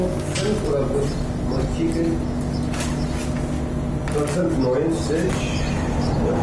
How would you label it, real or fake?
real